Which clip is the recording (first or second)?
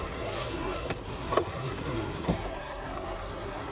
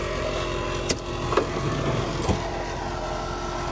second